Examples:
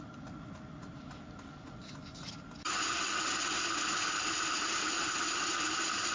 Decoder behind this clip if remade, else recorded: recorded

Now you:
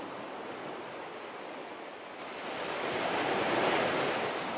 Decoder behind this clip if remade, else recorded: recorded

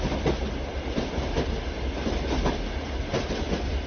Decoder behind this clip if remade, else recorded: recorded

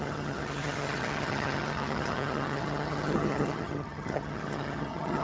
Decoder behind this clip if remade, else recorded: remade, vocoder, HiFi-GAN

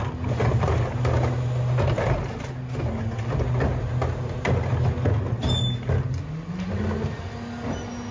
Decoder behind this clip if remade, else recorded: recorded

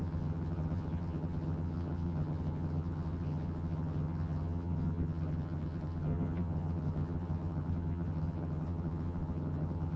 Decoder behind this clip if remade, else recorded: remade, vocoder, HiFi-GAN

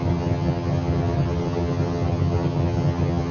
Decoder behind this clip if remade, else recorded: remade, vocoder, HiFi-GAN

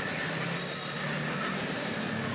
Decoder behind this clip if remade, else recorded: recorded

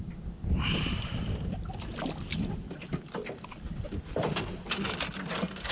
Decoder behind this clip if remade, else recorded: recorded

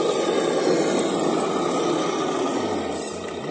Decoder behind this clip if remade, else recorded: recorded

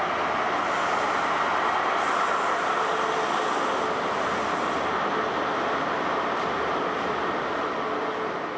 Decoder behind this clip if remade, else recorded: recorded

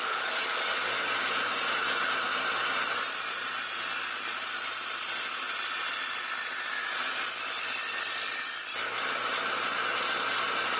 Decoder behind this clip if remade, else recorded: recorded